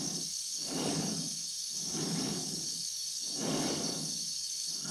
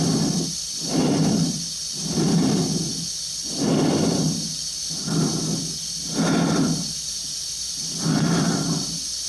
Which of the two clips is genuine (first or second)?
second